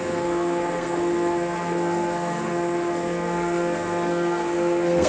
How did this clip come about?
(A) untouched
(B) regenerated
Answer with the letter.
B